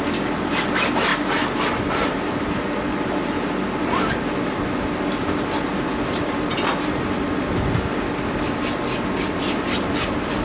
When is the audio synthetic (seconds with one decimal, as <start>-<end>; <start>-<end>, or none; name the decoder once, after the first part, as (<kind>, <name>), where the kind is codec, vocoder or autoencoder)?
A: none